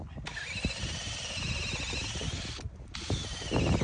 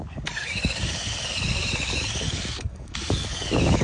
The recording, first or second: first